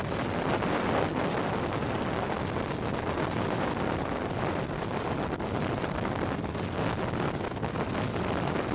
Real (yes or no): yes